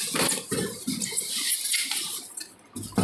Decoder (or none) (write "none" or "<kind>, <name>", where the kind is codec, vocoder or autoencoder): none